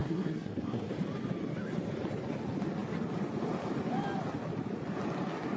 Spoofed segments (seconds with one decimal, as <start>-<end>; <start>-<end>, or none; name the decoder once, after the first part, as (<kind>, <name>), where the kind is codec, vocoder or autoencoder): 0.0-0.9 (codec, SNAC)